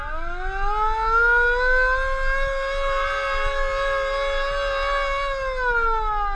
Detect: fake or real real